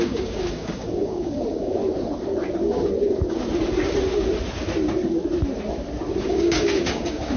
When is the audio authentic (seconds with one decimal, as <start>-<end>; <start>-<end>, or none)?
1.8-6.2